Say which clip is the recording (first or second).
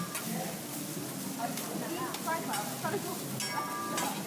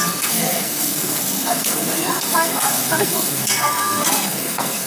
first